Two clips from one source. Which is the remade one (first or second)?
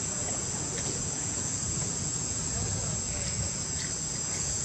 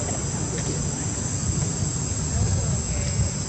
first